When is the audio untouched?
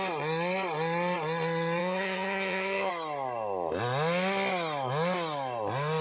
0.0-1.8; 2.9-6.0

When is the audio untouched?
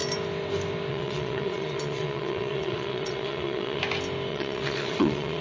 0.0-0.9; 3.8-4.3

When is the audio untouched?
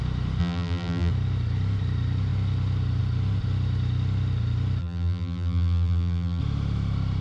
0.0-0.4; 1.1-4.8; 6.4-7.2